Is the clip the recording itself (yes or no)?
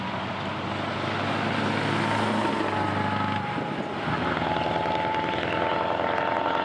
yes